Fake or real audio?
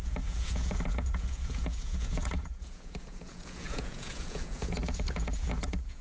fake